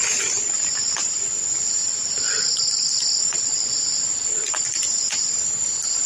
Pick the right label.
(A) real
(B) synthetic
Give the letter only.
B